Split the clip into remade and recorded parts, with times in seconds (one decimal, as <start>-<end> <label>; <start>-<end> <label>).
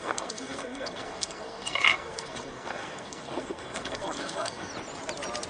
0.0-4.7 remade; 4.7-5.5 recorded